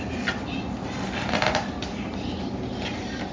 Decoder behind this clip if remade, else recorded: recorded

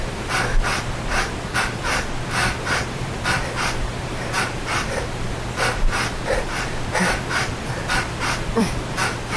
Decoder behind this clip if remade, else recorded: remade, vocoder, BigVGAN v2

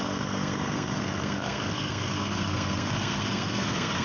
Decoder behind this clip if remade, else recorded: remade, codec, SNAC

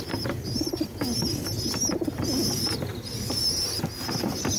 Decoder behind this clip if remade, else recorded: recorded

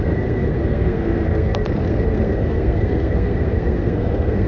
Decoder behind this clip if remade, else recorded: remade, codec, SNAC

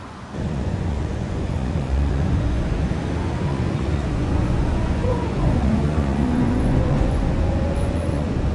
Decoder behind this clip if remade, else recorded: remade, vocoder, Vocos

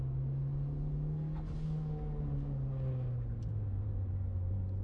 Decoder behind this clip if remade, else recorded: recorded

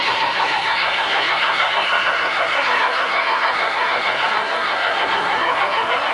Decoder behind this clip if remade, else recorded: remade, codec, SNAC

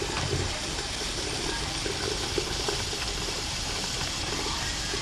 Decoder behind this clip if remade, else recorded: recorded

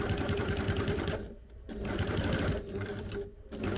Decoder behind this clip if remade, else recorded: remade, vocoder, BigVGAN v2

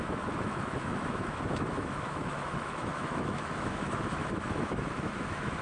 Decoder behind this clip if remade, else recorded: remade, autoencoder, DAC-VAE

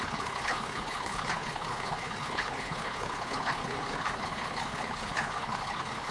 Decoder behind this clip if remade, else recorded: remade, codec, HILCodec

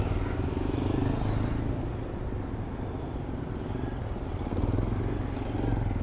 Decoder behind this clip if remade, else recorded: recorded